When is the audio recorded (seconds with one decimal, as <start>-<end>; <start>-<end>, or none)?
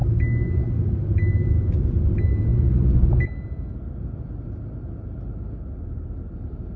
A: 0.0-6.8